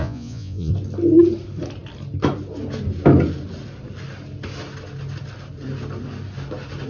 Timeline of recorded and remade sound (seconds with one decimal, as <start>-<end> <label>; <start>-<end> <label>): 0.0-0.7 remade; 0.7-6.9 recorded